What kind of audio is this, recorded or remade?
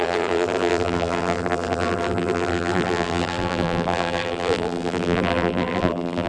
remade